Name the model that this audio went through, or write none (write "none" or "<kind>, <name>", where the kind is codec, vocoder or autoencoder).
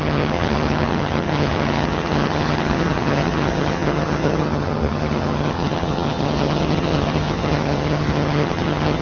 vocoder, HiFi-GAN